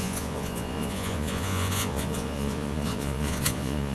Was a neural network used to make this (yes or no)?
yes